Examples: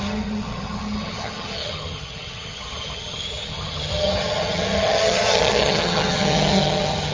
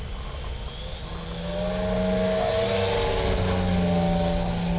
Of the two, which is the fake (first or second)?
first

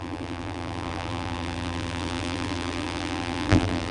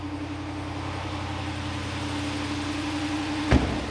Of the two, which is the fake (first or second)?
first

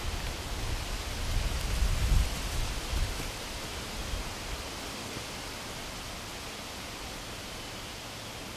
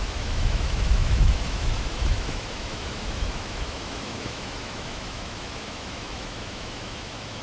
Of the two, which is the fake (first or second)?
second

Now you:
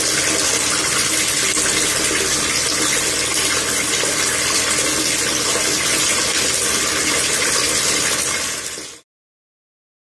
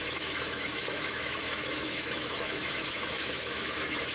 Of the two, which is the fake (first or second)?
second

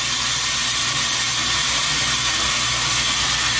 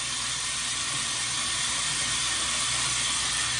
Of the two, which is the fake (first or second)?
second